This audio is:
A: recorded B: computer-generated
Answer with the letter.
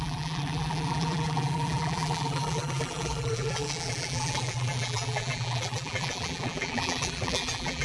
B